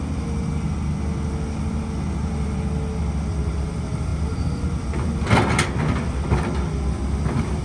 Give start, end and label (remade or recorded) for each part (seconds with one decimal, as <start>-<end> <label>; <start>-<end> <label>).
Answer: 0.0-7.6 recorded